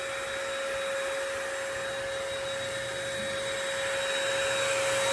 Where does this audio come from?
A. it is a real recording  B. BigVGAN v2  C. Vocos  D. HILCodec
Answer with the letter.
A